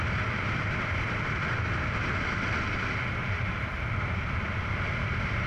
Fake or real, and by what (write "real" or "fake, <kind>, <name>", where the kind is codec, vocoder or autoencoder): fake, vocoder, BigVGAN v2